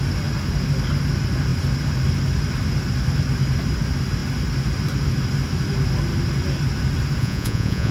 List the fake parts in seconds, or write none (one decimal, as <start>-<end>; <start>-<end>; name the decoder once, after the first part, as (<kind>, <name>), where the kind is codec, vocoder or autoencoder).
7.2-7.9 (vocoder, Vocos)